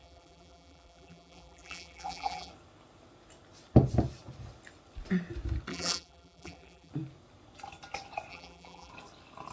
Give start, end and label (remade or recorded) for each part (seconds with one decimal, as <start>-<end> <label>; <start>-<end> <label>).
0.0-2.5 remade; 2.5-5.7 recorded; 5.7-6.9 remade; 6.9-8.3 recorded; 8.3-8.9 remade; 8.9-9.5 recorded